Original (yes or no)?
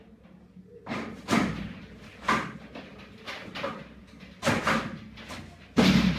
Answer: yes